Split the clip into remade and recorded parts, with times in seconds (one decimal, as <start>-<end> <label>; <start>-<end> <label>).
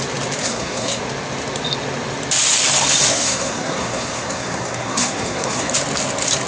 0.0-0.4 recorded; 0.4-1.0 remade; 1.0-3.1 recorded; 3.1-5.7 remade; 5.7-6.5 recorded